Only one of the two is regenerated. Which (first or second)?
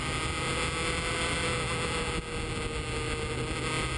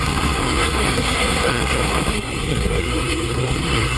second